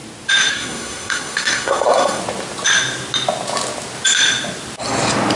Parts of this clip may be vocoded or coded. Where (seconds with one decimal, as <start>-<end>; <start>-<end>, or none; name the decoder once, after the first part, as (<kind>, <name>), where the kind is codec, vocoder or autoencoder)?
0.5-2.2 (codec, SNAC)